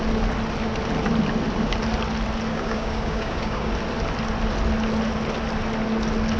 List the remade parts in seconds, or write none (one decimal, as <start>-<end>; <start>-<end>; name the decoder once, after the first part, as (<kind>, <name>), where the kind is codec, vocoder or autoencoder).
2.5-3.7 (codec, DAC)